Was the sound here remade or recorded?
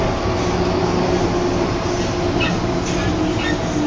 recorded